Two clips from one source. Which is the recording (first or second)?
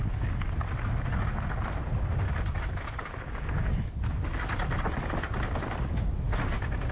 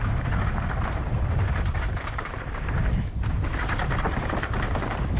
first